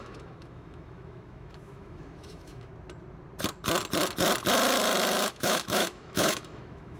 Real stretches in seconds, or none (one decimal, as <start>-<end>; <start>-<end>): 2.7-5.2